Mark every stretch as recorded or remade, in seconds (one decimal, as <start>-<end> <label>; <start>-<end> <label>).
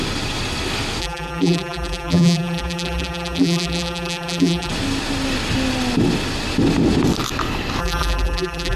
0.0-1.0 recorded; 1.0-4.7 remade; 4.7-7.8 recorded; 7.8-8.8 remade